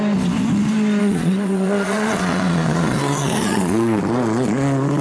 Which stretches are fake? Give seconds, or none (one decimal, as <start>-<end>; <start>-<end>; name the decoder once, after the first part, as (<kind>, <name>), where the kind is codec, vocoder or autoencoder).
1.0-4.0 (vocoder, Vocos)